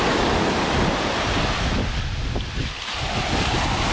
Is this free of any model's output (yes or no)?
yes